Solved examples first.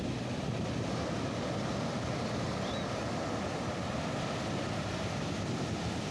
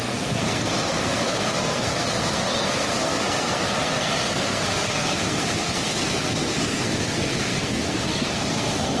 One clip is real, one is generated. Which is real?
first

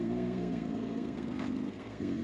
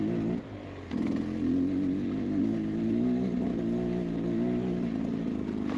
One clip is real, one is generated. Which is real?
second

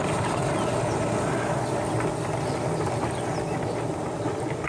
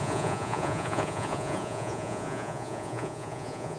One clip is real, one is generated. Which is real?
first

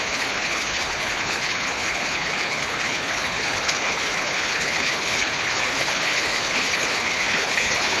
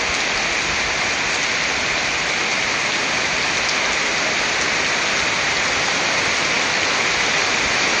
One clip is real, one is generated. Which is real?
second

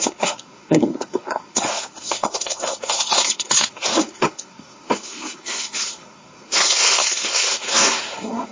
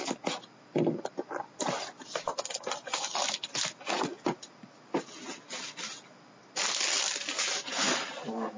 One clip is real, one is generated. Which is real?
second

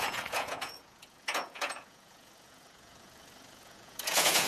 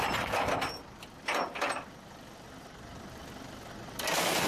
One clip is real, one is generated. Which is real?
second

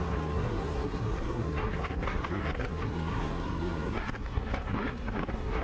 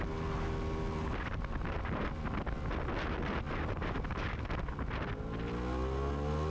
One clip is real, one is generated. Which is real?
second